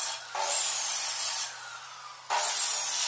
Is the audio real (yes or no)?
yes